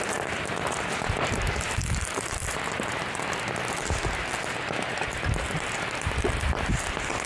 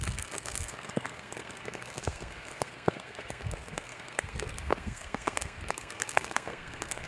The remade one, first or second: second